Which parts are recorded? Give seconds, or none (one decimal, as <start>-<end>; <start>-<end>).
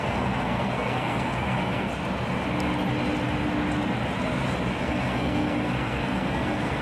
1.9-4.8